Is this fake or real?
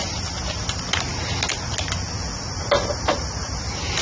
real